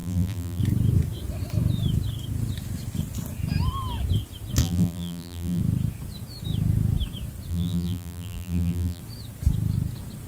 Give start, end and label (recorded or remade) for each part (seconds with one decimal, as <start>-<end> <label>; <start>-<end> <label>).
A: 0.0-0.6 remade; 0.6-4.6 recorded; 4.6-5.6 remade; 5.6-7.5 recorded; 7.5-9.0 remade; 9.0-10.3 recorded